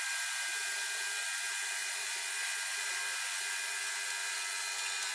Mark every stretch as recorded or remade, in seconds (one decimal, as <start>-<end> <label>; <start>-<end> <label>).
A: 0.0-5.1 recorded